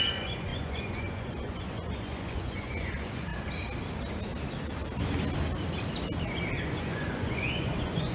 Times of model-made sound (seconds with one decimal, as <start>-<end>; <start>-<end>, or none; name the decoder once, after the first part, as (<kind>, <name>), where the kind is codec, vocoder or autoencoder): 0.0-3.3 (vocoder, Vocos); 6.6-8.1

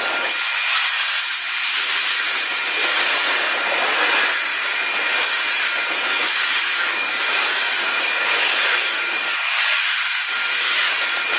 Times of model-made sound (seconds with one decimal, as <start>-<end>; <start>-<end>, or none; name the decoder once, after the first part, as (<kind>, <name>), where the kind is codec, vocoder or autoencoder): 6.2-10.9 (codec, DAC)